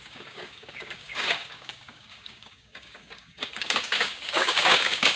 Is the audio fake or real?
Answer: fake